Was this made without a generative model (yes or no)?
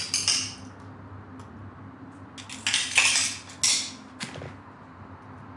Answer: yes